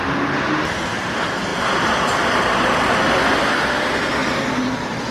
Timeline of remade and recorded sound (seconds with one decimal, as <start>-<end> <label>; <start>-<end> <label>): 0.0-5.1 recorded